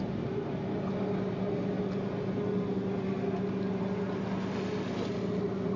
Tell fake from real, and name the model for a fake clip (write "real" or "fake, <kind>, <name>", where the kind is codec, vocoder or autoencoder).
real